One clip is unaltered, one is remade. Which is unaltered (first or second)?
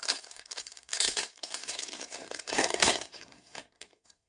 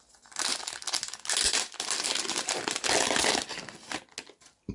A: second